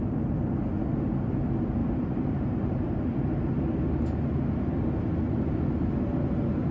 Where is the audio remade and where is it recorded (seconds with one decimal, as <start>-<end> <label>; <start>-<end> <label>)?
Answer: 0.0-1.8 recorded; 1.8-2.9 remade; 2.9-6.7 recorded